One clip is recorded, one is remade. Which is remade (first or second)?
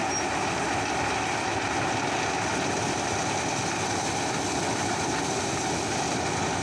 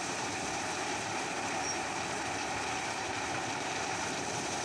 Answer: second